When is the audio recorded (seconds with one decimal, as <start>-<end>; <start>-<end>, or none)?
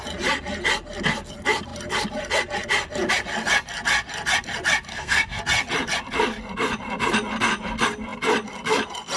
0.0-4.9; 5.4-9.2